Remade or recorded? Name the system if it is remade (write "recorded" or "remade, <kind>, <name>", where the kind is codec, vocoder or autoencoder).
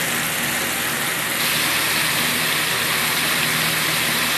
recorded